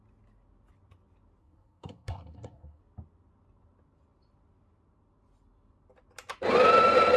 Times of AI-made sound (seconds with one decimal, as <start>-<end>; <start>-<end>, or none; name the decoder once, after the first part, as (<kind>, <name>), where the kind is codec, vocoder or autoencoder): 1.4-2.8 (codec, SNAC)